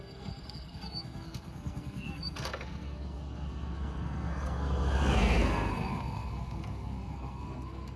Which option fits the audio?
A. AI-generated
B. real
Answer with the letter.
A